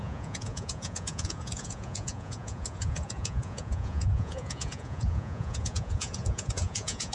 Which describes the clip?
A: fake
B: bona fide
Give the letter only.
A